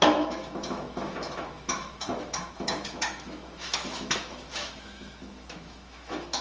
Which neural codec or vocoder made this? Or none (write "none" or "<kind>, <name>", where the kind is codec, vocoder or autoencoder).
autoencoder, DAC-VAE